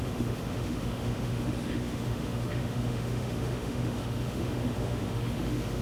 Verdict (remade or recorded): remade